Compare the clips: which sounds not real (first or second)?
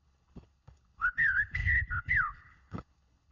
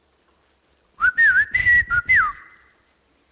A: first